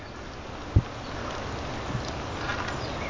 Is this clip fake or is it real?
real